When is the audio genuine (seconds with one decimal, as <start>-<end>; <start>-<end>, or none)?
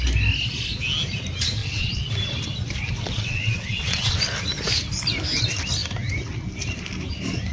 0.0-1.6; 2.1-3.0; 4.2-7.5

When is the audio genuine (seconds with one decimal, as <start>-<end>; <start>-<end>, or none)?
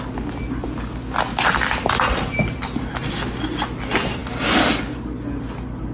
0.0-1.3; 3.0-4.2; 4.9-5.9